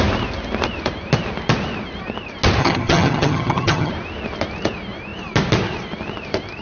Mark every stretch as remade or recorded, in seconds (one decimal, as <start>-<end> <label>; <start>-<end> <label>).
0.0-2.6 recorded; 2.6-3.9 remade; 3.9-6.6 recorded